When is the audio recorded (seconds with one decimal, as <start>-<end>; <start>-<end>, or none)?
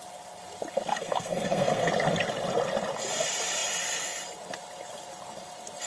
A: 0.0-0.9; 1.9-5.9